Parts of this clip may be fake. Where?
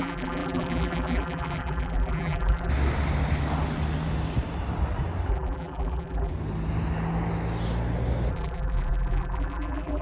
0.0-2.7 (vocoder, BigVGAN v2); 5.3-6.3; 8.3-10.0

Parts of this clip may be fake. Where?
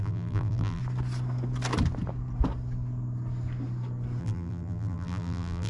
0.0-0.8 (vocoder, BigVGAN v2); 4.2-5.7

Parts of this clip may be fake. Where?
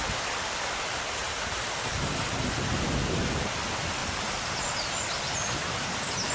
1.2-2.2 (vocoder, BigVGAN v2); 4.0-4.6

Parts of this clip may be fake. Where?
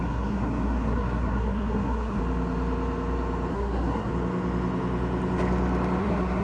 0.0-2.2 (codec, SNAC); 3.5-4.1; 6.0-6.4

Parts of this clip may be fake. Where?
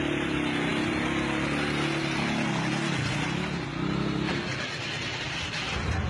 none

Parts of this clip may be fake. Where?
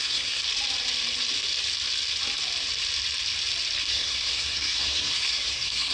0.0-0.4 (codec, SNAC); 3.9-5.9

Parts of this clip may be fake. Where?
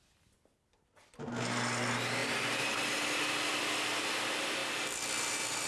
none